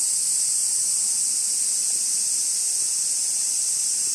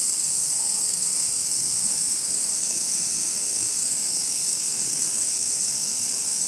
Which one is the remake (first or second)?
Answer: second